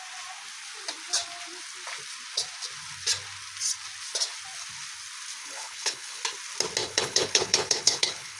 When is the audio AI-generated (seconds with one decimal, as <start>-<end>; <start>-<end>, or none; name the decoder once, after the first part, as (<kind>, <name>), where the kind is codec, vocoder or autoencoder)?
5.4-6.2 (codec, HILCodec); 6.8-8.4